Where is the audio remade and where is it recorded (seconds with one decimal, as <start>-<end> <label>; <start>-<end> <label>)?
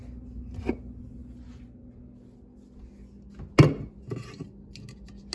0.0-5.3 recorded